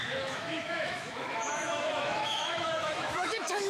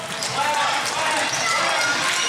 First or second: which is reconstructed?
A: first